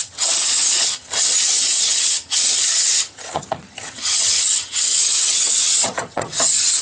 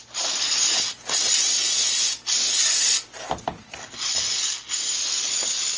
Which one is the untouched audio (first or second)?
second